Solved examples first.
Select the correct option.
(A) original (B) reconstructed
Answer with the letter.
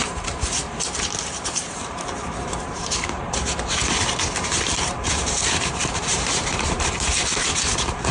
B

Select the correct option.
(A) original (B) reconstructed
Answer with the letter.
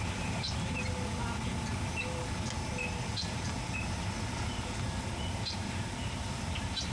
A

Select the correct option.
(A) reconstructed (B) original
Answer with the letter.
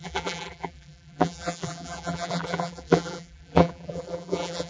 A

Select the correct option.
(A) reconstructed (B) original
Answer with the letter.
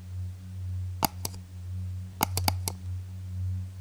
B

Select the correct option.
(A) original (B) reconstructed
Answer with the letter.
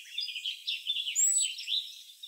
A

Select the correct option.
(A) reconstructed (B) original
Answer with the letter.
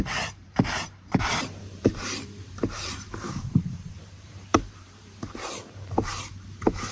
A